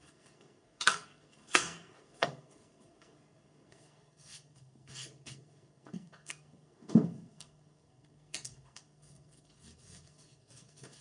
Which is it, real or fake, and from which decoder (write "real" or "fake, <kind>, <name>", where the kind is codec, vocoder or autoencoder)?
fake, codec, SNAC